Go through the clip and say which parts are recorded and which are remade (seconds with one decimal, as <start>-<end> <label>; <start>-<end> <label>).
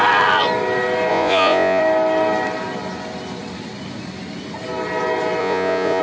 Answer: 0.0-1.1 recorded; 1.1-1.8 remade; 1.8-5.4 recorded; 5.4-6.0 remade